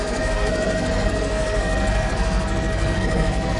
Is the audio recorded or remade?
remade